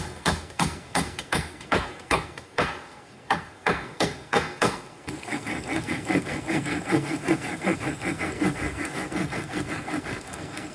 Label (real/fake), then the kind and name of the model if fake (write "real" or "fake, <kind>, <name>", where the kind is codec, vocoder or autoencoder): fake, codec, SNAC